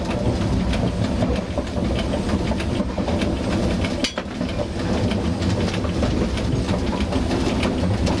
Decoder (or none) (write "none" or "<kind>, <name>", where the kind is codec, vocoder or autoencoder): none